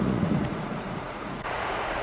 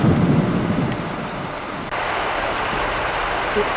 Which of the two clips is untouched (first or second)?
second